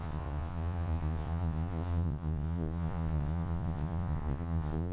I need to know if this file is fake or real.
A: fake